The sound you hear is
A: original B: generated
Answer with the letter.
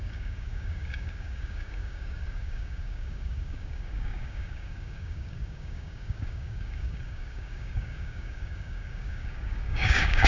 B